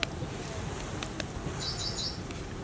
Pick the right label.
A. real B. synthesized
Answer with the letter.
A